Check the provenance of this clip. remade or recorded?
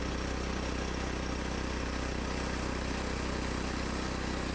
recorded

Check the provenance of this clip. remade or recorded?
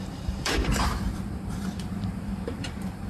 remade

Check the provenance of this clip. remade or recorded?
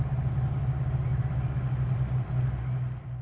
recorded